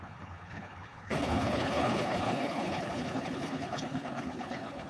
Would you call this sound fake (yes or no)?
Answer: yes